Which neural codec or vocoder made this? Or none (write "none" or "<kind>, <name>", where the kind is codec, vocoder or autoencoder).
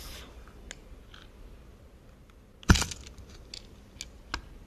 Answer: none